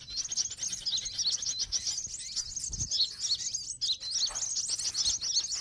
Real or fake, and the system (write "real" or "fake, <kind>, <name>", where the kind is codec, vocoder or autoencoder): real